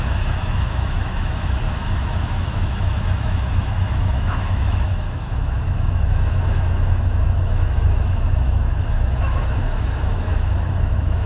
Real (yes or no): no